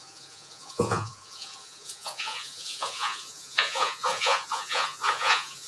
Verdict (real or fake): fake